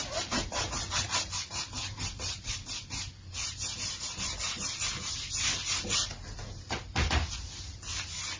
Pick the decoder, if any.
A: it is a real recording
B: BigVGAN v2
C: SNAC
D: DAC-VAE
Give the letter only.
A